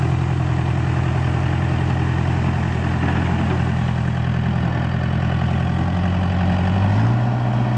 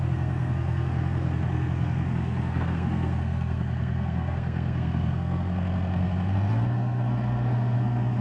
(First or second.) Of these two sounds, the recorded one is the first